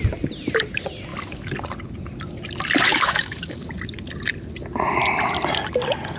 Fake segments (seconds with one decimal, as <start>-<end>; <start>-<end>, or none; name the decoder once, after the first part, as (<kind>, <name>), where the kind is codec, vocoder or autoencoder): 2.9-3.7 (autoencoder, DAC-VAE)